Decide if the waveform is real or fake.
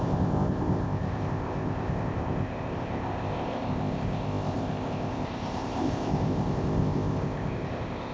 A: fake